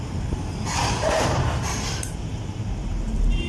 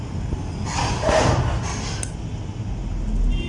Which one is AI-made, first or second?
first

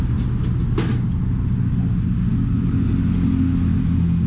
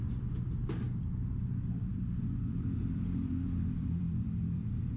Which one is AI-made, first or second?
second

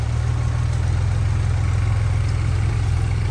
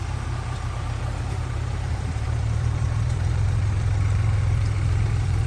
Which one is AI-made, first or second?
second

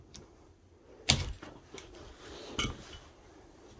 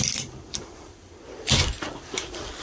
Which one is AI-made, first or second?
second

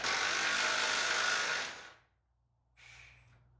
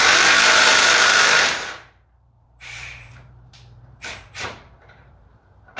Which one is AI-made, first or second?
second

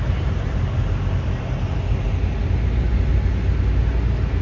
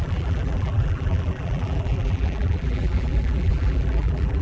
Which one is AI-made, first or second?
second